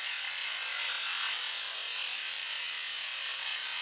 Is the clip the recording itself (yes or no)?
yes